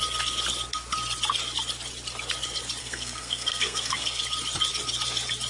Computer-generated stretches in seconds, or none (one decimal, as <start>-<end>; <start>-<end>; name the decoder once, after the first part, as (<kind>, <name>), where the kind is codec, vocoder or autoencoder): 2.8-4.2 (codec, SNAC)